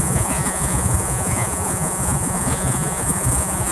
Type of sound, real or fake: fake